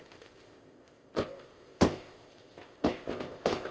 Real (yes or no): no